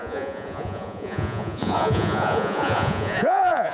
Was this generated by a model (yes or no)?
yes